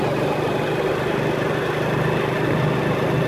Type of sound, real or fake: real